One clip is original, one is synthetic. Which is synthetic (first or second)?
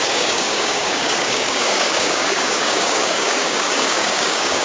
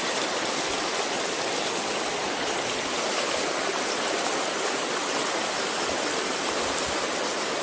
first